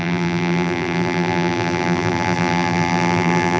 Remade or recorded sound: remade